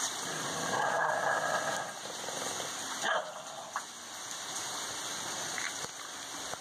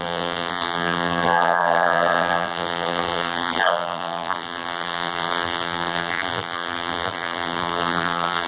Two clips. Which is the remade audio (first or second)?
second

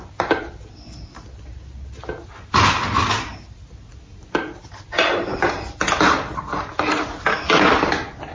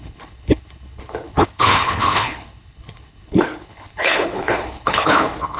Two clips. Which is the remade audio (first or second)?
second